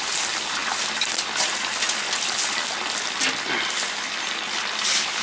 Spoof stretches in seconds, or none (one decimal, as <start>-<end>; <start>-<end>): none